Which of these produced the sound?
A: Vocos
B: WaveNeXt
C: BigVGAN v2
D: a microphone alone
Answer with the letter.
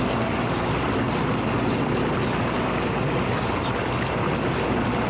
D